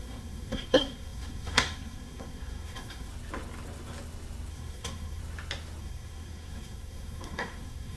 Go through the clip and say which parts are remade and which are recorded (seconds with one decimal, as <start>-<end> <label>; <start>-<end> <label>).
0.0-3.1 remade; 3.1-4.5 recorded; 4.5-5.2 remade; 5.2-5.8 recorded; 5.8-8.0 remade